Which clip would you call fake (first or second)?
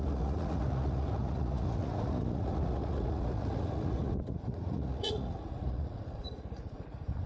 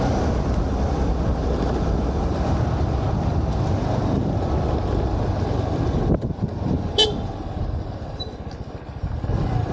first